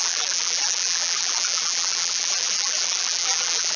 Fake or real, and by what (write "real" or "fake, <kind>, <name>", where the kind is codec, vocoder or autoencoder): fake, vocoder, BigVGAN v2